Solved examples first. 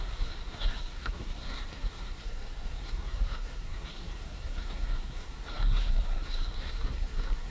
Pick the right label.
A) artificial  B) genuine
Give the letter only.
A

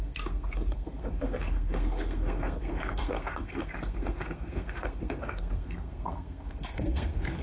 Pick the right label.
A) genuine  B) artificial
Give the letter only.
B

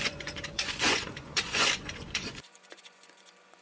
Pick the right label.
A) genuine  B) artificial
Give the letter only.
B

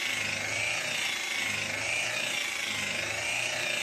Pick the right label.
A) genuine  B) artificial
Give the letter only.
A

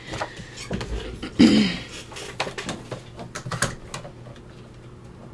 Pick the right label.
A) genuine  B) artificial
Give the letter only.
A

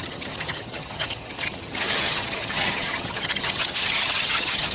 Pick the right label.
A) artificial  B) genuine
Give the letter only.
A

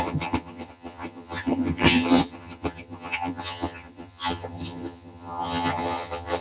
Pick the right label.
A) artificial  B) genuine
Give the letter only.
A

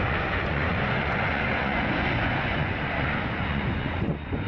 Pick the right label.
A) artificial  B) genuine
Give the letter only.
A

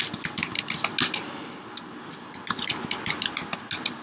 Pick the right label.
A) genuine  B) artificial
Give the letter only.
A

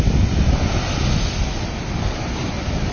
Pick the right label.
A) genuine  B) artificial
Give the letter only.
A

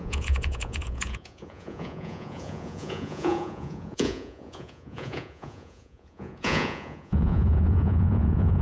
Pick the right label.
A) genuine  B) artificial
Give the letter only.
B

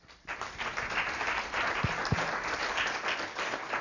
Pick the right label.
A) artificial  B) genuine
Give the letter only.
B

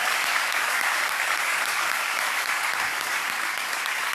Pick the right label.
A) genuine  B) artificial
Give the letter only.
B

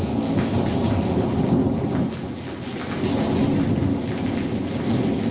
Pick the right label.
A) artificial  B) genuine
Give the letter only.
B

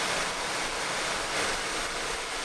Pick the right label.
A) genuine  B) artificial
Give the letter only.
B